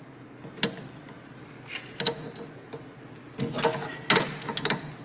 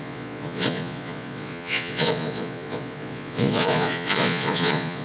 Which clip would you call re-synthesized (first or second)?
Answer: second